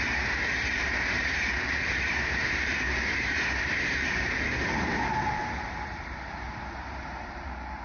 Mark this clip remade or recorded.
remade